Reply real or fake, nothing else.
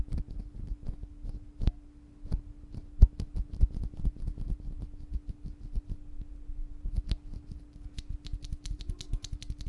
real